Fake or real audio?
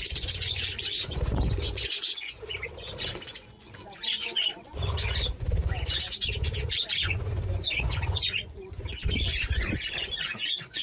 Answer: fake